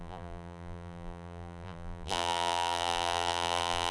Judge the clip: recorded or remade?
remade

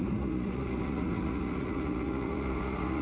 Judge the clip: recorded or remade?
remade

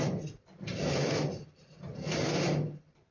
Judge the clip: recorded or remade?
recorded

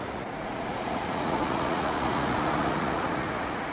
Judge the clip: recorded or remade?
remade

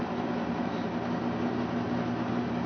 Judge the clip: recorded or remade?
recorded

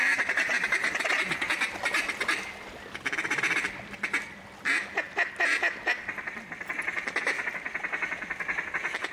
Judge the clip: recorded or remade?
recorded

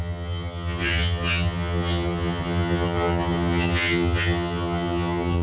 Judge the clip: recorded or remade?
remade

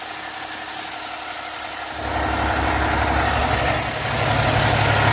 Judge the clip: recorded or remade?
recorded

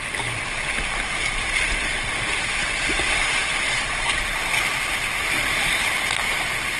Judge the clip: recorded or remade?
recorded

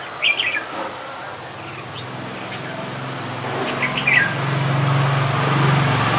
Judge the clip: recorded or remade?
recorded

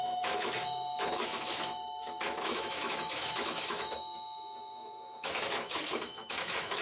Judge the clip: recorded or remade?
remade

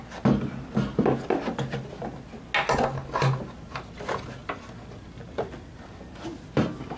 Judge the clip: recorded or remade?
recorded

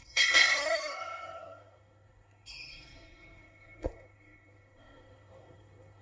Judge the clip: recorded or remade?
remade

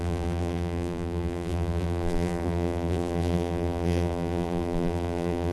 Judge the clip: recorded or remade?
remade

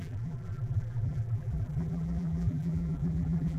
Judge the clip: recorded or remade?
remade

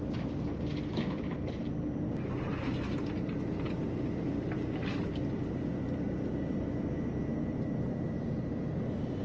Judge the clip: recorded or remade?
recorded